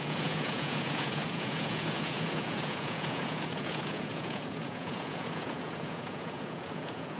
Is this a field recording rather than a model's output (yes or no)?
no